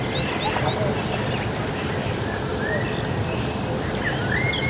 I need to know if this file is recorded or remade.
recorded